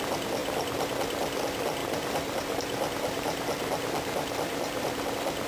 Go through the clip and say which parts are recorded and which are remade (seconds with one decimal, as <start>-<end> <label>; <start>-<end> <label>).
0.0-0.4 recorded; 0.4-0.9 remade; 0.9-1.8 recorded; 1.8-5.1 remade; 5.1-5.5 recorded